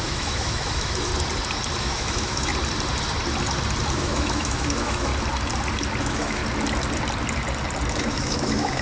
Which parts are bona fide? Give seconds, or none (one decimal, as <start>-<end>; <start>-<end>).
1.1-1.8; 2.5-3.9; 5.1-6.0; 6.4-7.9